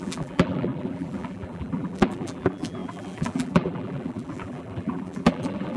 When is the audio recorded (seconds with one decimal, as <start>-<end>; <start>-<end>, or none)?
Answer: none

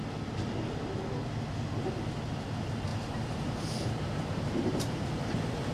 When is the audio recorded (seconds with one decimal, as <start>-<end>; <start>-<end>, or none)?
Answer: 0.0-2.9

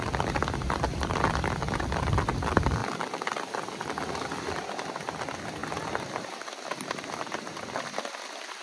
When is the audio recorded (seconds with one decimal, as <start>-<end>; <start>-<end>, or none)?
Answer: 0.0-8.6

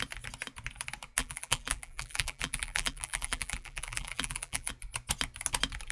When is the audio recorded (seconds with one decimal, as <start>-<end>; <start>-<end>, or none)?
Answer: 0.0-1.2; 4.7-5.9

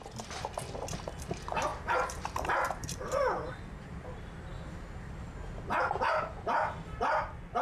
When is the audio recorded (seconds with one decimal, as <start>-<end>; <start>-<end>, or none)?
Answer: 0.0-1.7; 3.6-7.6

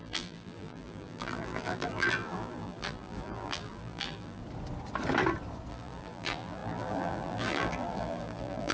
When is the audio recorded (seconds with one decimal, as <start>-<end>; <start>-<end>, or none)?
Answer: 4.4-5.7

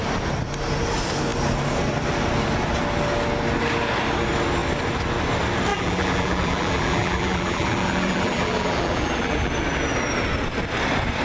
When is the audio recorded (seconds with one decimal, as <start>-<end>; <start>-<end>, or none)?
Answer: 0.0-5.7; 9.5-11.2